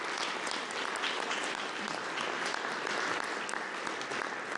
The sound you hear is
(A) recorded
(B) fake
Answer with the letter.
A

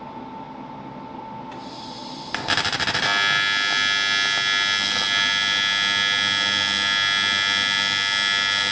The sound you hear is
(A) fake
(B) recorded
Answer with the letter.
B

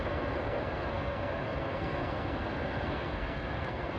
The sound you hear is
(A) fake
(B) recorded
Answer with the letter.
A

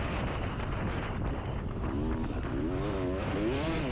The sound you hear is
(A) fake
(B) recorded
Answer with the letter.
B